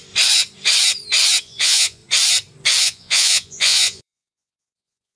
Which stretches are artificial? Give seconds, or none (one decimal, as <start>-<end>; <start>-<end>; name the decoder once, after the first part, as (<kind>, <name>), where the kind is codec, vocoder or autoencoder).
1.4-2.0 (vocoder, Vocos); 2.8-5.2